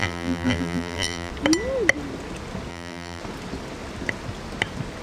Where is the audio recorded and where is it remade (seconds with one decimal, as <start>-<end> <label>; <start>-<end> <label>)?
0.0-1.3 remade; 1.3-2.7 recorded; 2.7-3.2 remade; 3.2-5.0 recorded